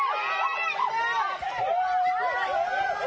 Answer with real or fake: real